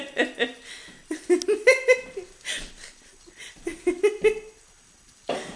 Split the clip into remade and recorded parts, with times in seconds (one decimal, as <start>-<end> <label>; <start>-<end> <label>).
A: 0.0-5.6 recorded